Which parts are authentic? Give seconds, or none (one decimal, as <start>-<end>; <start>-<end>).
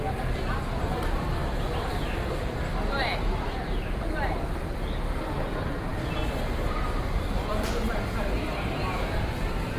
0.0-9.8